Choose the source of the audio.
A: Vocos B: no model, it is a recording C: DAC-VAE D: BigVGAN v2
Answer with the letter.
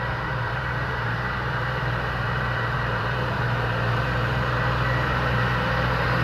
D